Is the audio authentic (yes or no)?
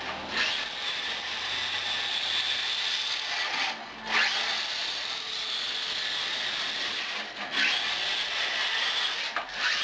yes